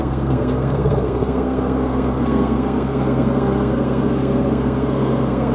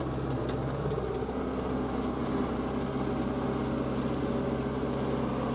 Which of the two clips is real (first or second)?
second